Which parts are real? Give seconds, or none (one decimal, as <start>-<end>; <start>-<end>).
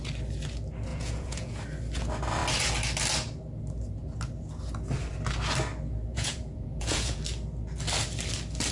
0.0-0.9; 1.6-6.1; 7.2-8.7